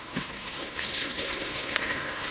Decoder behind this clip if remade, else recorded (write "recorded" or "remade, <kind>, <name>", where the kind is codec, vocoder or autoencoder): remade, codec, SNAC